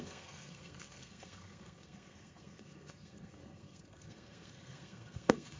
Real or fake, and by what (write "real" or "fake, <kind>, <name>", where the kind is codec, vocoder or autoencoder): fake, codec, SNAC